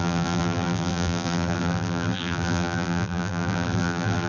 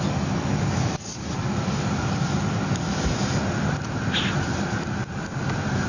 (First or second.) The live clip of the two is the second